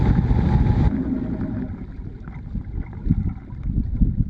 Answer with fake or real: real